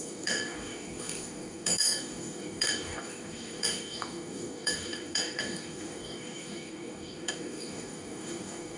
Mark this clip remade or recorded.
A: remade